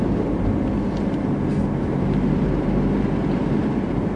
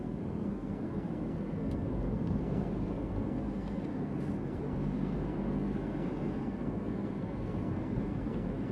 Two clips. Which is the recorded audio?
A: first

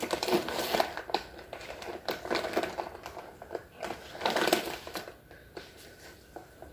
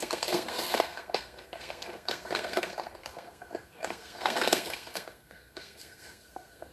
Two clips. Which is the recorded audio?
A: first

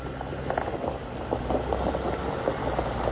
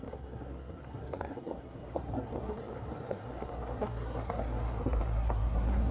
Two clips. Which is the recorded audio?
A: first